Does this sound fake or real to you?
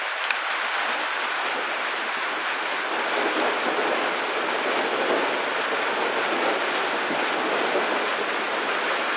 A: real